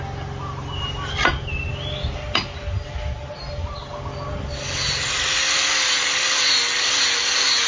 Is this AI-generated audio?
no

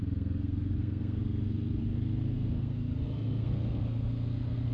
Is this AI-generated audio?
yes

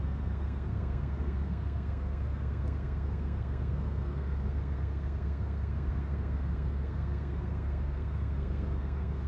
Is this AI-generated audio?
yes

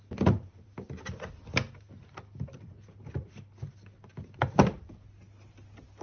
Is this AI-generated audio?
no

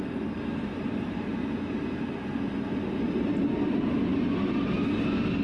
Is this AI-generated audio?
no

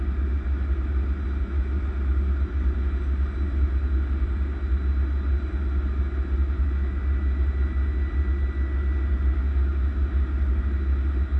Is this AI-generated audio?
no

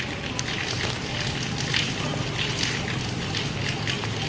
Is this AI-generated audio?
no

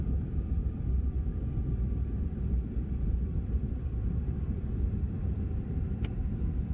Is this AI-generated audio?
yes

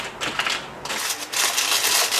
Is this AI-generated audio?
no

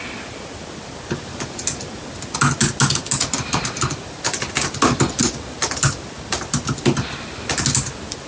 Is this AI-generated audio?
no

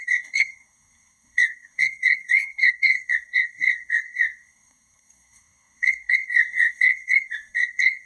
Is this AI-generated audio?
yes